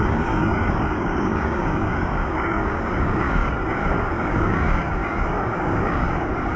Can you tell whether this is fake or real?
fake